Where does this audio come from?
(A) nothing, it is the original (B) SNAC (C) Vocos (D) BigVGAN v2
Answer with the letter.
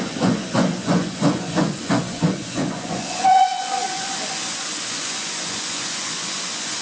C